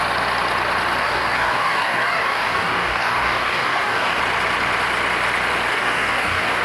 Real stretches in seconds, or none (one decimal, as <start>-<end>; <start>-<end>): 0.0-1.0; 4.2-5.7